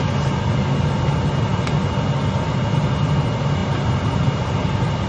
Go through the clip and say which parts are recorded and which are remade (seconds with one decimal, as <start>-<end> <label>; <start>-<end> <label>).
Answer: 0.0-5.1 recorded

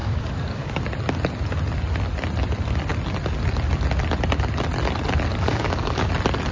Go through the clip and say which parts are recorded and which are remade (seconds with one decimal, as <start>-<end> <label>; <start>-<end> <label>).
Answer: 0.0-0.8 remade; 0.8-5.3 recorded; 5.3-6.1 remade; 6.1-6.5 recorded

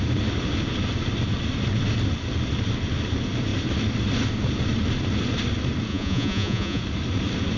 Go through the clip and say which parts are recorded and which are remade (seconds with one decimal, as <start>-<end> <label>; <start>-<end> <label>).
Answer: 0.0-5.9 recorded; 5.9-6.8 remade; 6.8-7.6 recorded

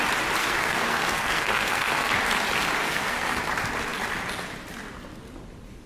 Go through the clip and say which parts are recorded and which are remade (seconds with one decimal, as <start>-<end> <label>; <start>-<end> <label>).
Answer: 0.0-0.4 recorded; 0.4-2.1 remade; 2.1-2.8 recorded; 2.8-3.4 remade; 3.4-5.9 recorded

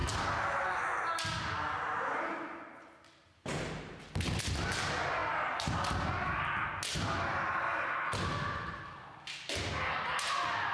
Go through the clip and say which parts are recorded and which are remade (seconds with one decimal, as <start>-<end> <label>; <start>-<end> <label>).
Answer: 0.0-10.7 recorded

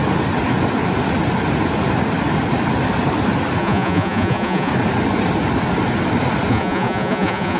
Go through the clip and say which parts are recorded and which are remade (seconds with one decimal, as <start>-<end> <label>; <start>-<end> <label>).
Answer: 0.0-3.6 recorded; 3.6-4.7 remade; 4.7-6.5 recorded; 6.5-7.6 remade